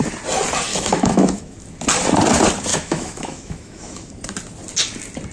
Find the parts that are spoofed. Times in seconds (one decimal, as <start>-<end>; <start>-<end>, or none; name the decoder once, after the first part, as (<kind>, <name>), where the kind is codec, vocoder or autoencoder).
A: 0.7-1.6 (autoencoder, DAC-VAE); 2.7-4.1